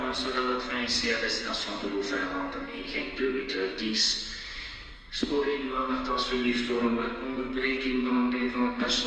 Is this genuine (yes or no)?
no